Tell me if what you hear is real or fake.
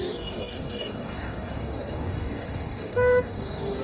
fake